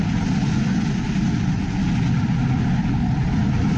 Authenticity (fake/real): real